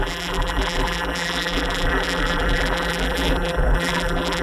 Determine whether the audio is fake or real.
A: fake